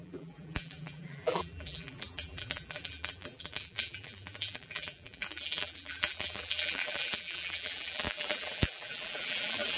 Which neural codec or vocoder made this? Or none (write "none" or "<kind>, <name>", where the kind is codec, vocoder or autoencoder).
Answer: vocoder, BigVGAN v2